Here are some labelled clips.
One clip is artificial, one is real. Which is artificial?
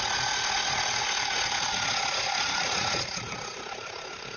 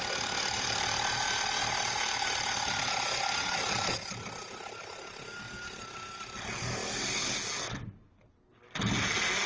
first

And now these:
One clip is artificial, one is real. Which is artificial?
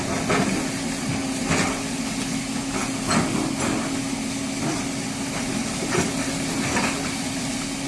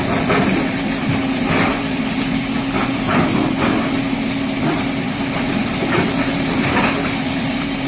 second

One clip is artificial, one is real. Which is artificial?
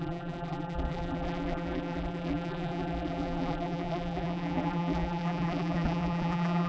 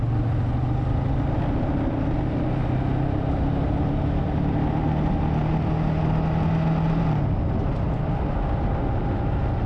first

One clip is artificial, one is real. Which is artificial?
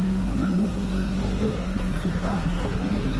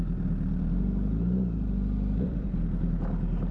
first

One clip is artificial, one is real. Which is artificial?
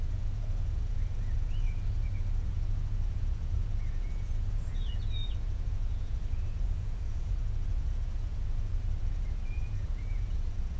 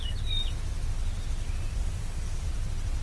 first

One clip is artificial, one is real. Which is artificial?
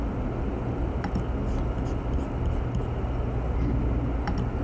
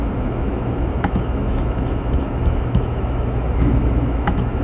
second